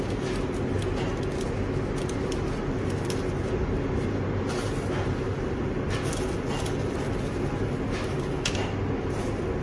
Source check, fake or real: real